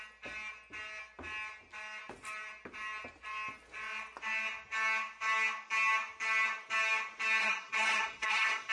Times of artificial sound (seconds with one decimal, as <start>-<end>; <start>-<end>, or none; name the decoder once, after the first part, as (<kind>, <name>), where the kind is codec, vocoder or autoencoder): 7.4-8.7 (codec, SNAC)